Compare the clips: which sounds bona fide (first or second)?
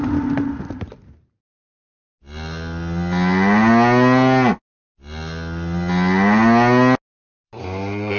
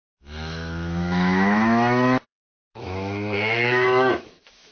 first